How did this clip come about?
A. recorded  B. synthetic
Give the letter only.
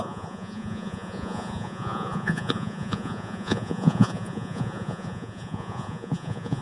B